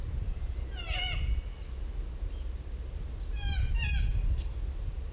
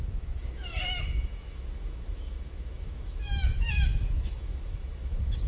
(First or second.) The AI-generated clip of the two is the second